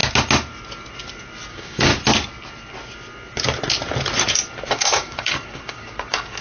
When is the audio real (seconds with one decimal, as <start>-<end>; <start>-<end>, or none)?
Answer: 0.0-1.5; 1.9-4.7